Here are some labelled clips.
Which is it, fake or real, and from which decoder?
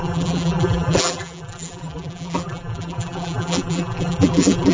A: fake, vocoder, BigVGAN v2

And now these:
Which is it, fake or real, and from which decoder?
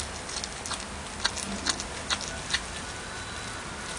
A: real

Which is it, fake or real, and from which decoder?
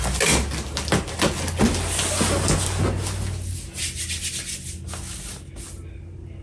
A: real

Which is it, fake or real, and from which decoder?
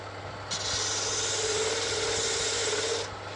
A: real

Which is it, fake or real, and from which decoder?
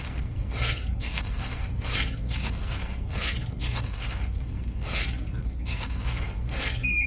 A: fake, codec, SNAC